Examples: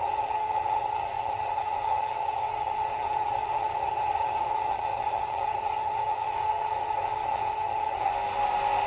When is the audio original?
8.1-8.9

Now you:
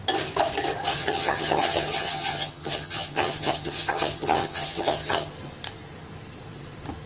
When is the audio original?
0.0-1.0; 5.3-7.1

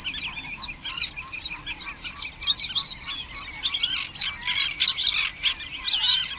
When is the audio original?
0.0-6.4

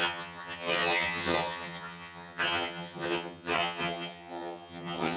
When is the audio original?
none

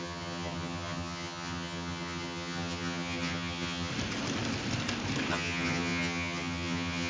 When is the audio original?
3.9-5.3

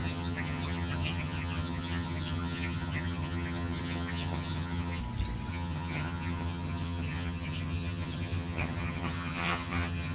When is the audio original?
5.0-5.5

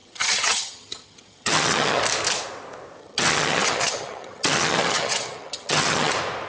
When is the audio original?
2.0-3.0; 6.1-6.5